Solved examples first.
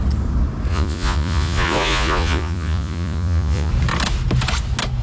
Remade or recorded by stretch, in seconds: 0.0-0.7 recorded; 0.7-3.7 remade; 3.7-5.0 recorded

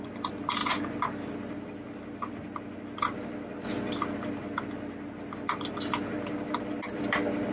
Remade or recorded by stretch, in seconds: 0.0-7.5 recorded

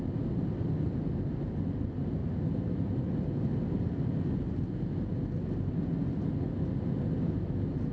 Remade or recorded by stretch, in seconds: 0.0-2.2 recorded; 2.2-3.1 remade; 3.1-7.9 recorded

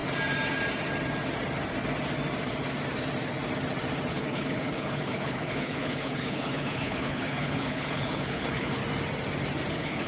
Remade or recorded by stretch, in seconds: 0.0-4.1 recorded; 4.1-8.8 remade; 8.8-9.7 recorded; 9.7-10.1 remade